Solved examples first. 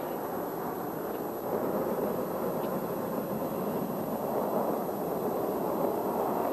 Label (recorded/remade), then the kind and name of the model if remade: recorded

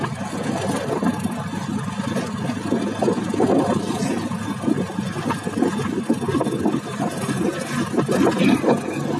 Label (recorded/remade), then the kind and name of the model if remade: recorded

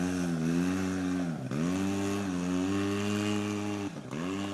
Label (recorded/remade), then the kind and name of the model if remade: recorded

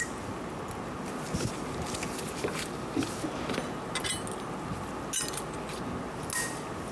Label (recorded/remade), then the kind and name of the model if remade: recorded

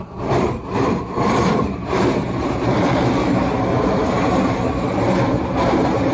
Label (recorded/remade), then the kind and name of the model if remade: remade, vocoder, BigVGAN v2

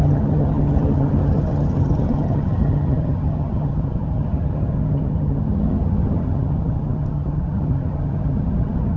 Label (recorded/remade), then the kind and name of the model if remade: remade, vocoder, HiFi-GAN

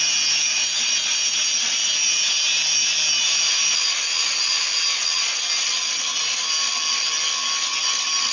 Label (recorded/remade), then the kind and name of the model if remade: recorded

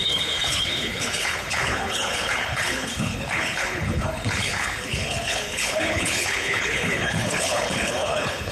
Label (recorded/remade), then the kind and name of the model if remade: remade, codec, HILCodec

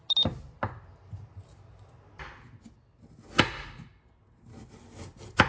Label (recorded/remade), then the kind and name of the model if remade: recorded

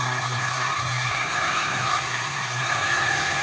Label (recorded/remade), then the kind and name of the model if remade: remade, codec, SNAC